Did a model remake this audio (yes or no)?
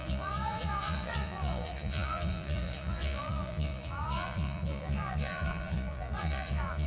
yes